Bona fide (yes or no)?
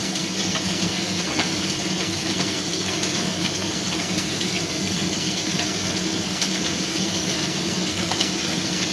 no